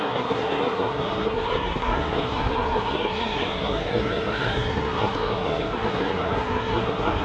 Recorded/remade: remade